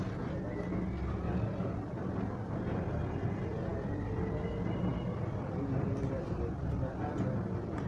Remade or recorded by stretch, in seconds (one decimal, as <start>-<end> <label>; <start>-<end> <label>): 0.0-3.7 recorded; 3.7-4.3 remade; 4.3-4.9 recorded; 4.9-7.0 remade; 7.0-7.9 recorded